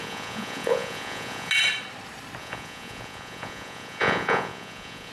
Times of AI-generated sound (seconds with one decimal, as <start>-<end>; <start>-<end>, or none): 0.0-1.5; 2.4-5.1